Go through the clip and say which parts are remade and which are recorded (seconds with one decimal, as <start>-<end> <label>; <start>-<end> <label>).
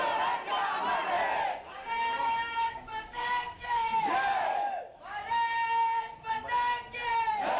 0.0-1.5 recorded; 1.5-6.1 remade; 6.1-7.6 recorded